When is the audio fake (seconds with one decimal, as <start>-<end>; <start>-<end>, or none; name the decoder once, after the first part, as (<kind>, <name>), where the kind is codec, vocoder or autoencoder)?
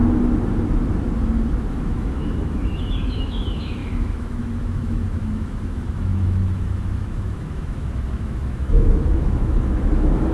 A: 1.7-10.3 (autoencoder, DAC-VAE)